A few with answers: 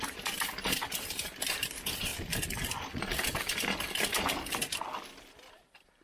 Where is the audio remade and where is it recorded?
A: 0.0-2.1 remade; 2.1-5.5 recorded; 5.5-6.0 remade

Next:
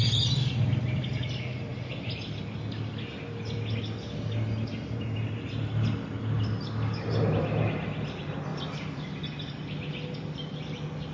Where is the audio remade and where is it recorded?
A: 0.0-8.5 recorded; 8.5-9.5 remade; 9.5-11.1 recorded

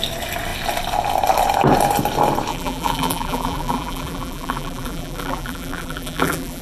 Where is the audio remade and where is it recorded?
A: 0.0-2.5 recorded; 2.5-6.6 remade

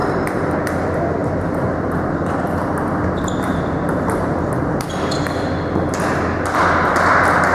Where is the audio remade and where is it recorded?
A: 0.0-0.7 remade; 0.7-1.2 recorded; 1.2-5.2 remade; 5.2-7.5 recorded

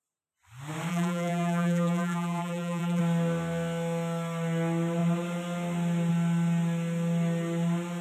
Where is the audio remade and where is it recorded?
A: 0.0-0.9 recorded; 0.9-3.0 remade; 3.0-8.0 recorded